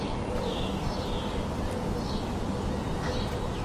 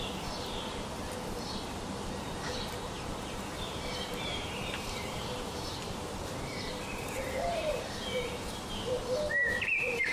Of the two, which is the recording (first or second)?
first